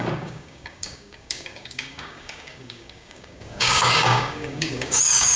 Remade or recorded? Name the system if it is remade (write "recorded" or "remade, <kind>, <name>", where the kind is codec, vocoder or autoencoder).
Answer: remade, codec, DAC